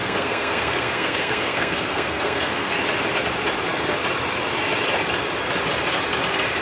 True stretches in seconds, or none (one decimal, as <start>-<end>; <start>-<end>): 2.8-6.6